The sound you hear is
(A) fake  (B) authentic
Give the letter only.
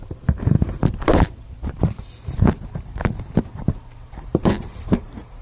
A